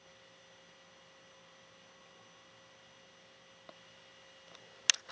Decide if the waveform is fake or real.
real